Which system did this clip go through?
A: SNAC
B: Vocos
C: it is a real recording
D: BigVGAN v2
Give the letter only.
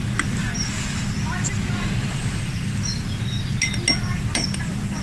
C